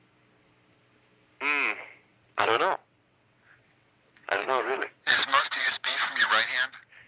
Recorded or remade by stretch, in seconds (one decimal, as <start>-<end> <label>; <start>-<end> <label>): 0.0-2.1 recorded; 2.1-6.3 remade; 6.3-7.1 recorded